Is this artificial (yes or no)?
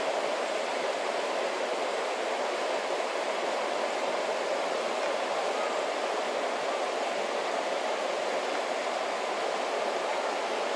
no